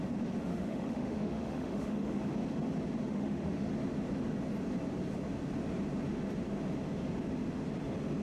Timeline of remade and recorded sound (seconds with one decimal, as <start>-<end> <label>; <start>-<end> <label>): 0.0-0.5 recorded; 0.5-2.2 remade; 2.2-3.1 recorded; 3.1-3.7 remade; 3.7-8.2 recorded